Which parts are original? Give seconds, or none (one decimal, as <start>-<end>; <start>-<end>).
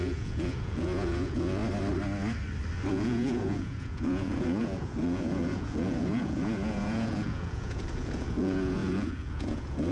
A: 1.6-2.9